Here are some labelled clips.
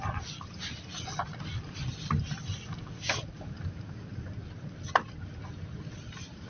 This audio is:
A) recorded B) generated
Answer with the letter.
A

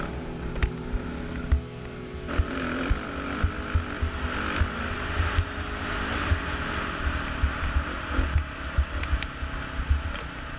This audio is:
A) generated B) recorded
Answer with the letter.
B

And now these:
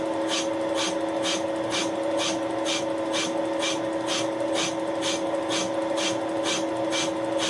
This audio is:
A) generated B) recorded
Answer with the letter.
B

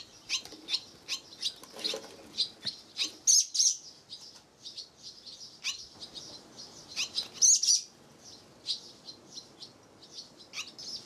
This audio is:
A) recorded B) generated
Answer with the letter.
A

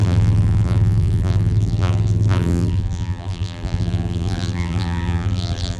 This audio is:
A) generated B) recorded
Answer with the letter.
A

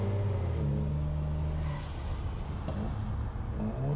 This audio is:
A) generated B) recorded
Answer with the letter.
B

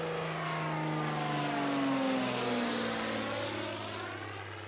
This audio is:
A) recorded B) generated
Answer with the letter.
A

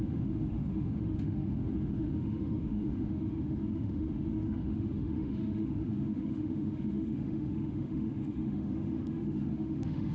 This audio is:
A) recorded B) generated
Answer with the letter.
B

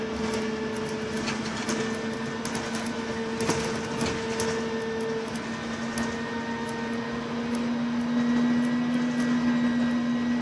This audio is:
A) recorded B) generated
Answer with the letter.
A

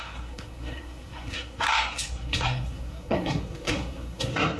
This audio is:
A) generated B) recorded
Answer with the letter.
A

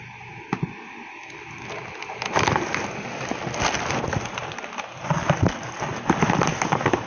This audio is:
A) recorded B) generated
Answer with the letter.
A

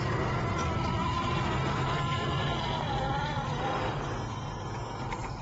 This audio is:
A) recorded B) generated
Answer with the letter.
A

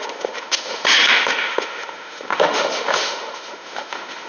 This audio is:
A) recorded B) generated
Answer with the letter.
B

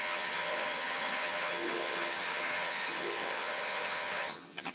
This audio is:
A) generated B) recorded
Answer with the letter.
A